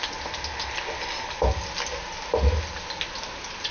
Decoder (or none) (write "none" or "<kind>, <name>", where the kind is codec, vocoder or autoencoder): none